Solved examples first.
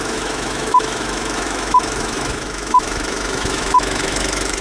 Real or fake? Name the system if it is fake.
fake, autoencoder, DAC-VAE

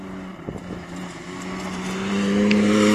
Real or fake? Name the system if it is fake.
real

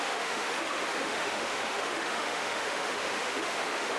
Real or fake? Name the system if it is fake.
fake, autoencoder, DAC-VAE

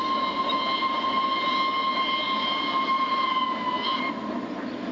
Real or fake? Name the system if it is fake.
real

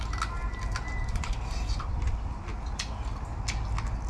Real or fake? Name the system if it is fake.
real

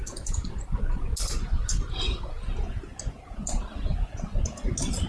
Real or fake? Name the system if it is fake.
real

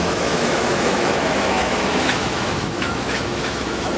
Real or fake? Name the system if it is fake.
fake, autoencoder, DAC-VAE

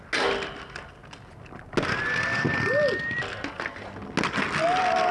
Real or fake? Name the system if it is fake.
real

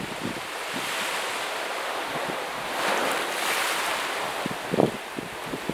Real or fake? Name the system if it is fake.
real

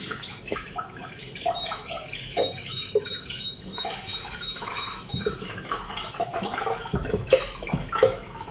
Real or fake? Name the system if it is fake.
fake, autoencoder, DAC-VAE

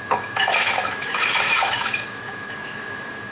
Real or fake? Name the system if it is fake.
fake, autoencoder, DAC-VAE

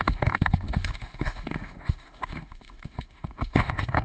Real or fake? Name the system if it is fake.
fake, autoencoder, DAC-VAE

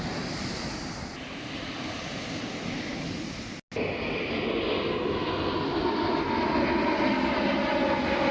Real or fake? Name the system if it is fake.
real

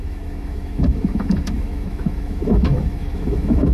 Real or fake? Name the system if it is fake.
fake, autoencoder, DAC-VAE